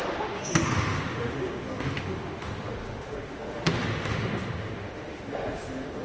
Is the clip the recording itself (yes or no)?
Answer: no